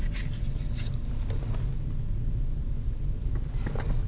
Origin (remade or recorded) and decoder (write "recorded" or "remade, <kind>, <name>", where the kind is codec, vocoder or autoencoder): recorded